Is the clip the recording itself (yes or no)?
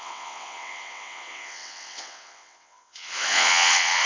no